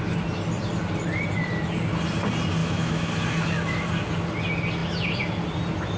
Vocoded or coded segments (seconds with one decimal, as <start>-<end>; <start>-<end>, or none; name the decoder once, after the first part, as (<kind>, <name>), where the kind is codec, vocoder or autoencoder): 2.6-3.1 (autoencoder, DAC-VAE)